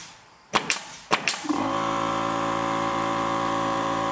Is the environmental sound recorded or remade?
remade